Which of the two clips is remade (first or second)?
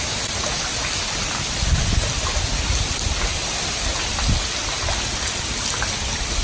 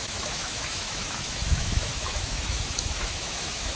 second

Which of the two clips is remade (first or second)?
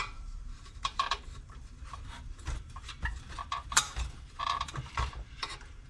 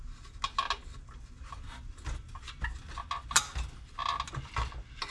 first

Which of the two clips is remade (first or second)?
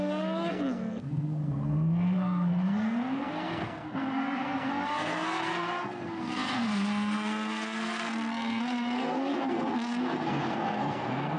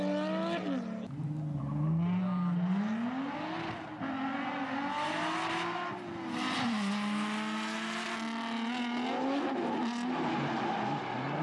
first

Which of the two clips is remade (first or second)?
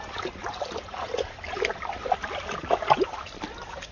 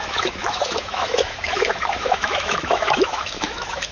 second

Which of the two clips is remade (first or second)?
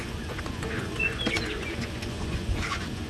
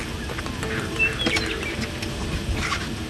first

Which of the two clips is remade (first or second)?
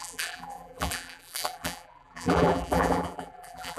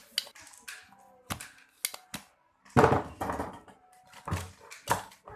first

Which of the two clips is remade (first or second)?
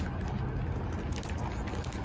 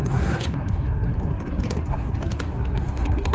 second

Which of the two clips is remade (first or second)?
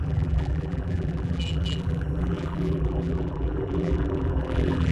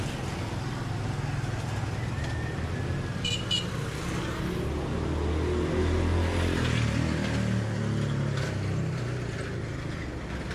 first